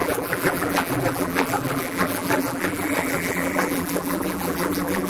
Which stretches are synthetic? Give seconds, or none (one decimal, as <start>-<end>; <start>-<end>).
0.0-5.1